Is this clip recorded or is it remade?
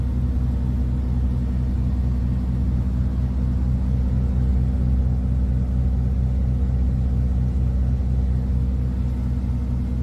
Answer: recorded